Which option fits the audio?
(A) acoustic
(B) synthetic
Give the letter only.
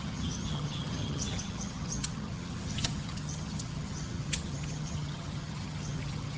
B